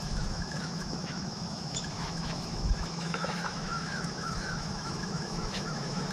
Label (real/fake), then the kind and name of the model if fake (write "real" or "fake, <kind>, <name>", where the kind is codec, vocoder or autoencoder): fake, autoencoder, DAC-VAE